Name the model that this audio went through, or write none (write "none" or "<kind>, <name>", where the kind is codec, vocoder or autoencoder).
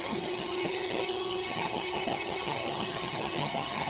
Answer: vocoder, HiFi-GAN